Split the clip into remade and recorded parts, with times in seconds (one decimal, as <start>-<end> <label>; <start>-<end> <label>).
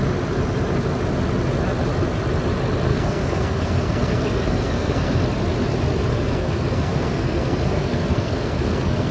0.0-2.9 recorded; 2.9-5.2 remade; 5.2-6.1 recorded; 6.1-9.1 remade